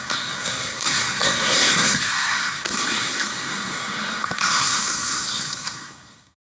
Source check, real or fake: fake